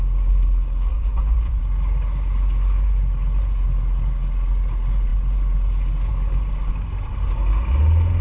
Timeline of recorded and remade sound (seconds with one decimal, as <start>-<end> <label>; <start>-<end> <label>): 0.0-0.9 recorded; 0.9-1.6 remade; 1.6-8.2 recorded